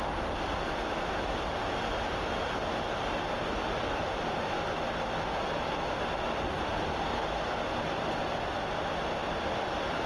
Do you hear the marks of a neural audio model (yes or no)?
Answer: no